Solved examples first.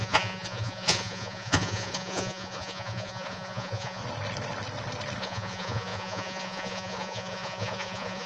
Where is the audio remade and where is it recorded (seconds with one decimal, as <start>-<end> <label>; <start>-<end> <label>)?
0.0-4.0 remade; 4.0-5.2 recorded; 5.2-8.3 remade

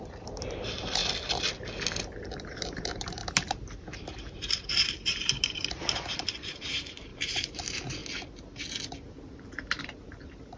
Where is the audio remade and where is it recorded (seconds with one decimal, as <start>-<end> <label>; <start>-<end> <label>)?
0.0-1.0 remade; 1.0-2.2 recorded; 2.2-8.0 remade; 8.0-9.8 recorded; 9.8-10.6 remade

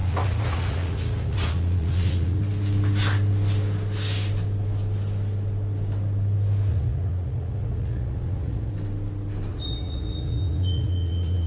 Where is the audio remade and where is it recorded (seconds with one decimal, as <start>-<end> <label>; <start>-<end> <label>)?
0.0-2.4 remade; 2.4-6.7 recorded; 6.7-8.7 remade; 8.7-9.5 recorded; 9.5-11.5 remade

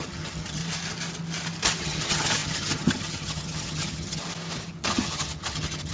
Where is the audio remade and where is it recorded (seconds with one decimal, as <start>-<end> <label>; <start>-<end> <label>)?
0.0-0.6 remade; 0.6-1.8 recorded; 1.8-4.2 remade; 4.2-4.8 recorded; 4.8-5.9 remade